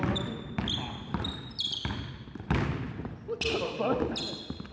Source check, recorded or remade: recorded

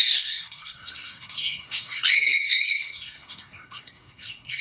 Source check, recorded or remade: remade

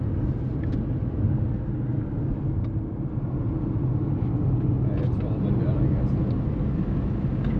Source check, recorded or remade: recorded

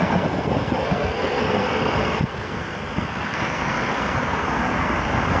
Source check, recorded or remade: remade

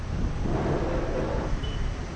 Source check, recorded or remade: recorded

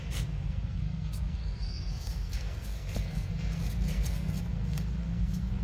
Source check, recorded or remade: remade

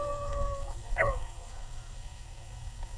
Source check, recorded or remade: remade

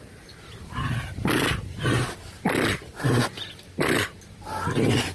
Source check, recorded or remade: recorded